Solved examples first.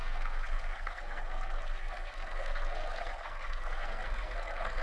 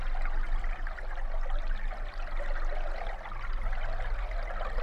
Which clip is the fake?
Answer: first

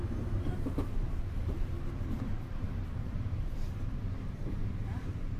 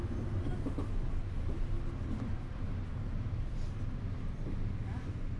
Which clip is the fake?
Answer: first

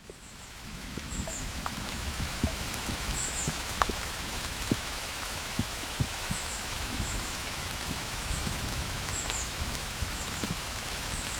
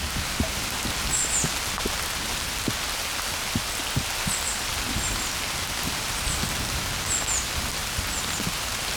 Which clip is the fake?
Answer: first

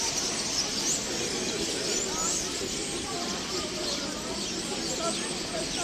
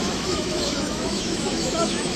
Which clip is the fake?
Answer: second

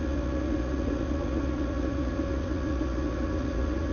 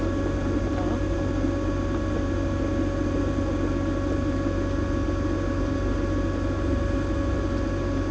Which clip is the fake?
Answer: first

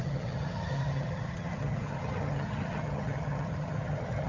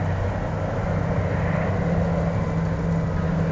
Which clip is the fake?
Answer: first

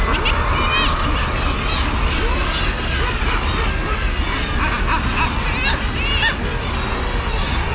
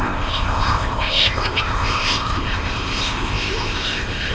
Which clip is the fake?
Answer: second